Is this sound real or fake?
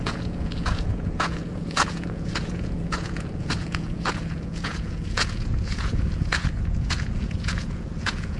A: fake